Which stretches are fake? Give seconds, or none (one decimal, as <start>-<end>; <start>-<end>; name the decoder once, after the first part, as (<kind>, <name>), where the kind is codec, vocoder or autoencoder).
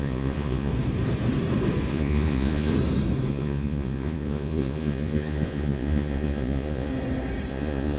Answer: 0.0-0.7 (vocoder, Vocos); 1.9-2.7; 3.3-6.9; 7.5-8.0